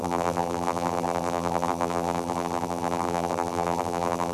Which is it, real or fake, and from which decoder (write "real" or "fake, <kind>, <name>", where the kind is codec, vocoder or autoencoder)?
fake, vocoder, BigVGAN v2